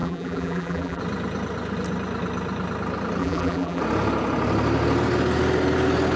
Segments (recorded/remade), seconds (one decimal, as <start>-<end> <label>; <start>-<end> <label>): 0.0-1.0 remade; 1.0-3.2 recorded; 3.2-3.8 remade; 3.8-6.2 recorded